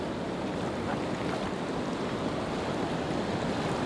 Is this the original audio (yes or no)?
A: yes